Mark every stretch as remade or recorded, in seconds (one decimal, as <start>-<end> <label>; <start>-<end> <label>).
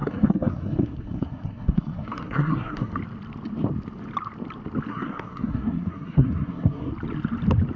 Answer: 0.0-3.0 remade; 3.0-4.9 recorded; 4.9-6.9 remade; 6.9-7.8 recorded